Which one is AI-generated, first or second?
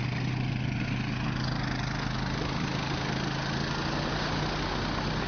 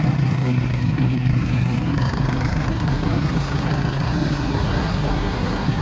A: second